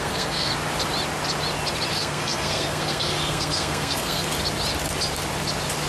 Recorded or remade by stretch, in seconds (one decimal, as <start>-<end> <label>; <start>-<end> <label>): 0.0-0.5 remade; 0.5-1.9 recorded; 1.9-4.3 remade; 4.3-5.9 recorded